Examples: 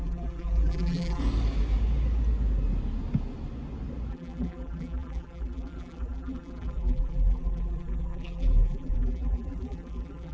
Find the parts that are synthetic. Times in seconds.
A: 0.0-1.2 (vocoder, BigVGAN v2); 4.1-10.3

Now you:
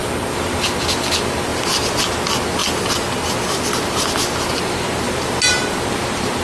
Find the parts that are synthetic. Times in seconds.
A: 1.5-2.0 (vocoder, BigVGAN v2); 2.6-5.3

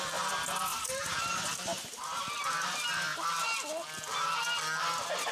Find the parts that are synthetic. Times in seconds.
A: 0.7-2.2 (vocoder, BigVGAN v2)

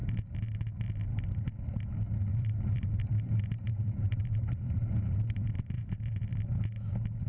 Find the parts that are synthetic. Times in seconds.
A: 2.3-6.3 (vocoder, BigVGAN v2)

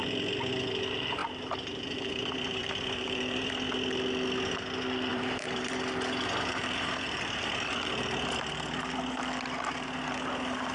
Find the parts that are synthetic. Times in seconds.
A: 1.2-3.5 (vocoder, BigVGAN v2); 5.1-5.7; 6.6-7.7